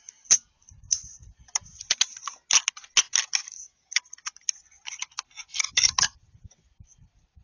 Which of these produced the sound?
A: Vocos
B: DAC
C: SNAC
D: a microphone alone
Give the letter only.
D